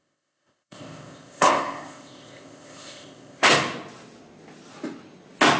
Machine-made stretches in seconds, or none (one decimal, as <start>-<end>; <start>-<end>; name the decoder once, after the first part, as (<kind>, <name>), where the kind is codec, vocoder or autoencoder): 0.0-3.5 (codec, ZipCodec)